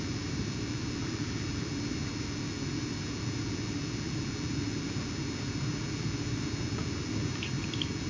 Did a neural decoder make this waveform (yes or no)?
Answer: yes